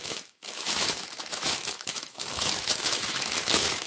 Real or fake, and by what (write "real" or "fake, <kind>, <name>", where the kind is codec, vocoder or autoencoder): fake, autoencoder, DAC-VAE